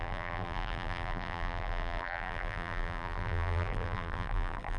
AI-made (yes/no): yes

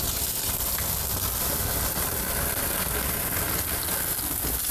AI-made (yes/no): no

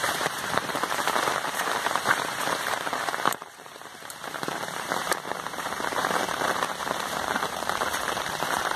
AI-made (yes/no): yes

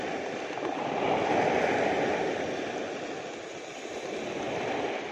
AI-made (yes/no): no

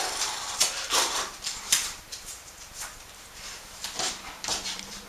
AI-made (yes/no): yes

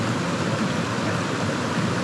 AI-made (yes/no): no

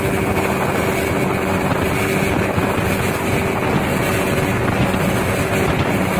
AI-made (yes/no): no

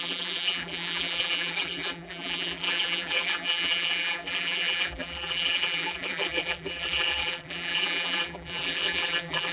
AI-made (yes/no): yes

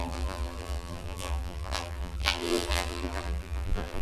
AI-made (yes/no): yes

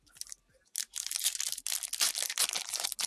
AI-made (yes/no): no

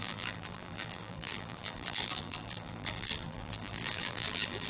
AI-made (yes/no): yes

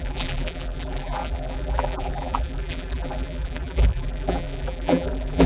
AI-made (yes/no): yes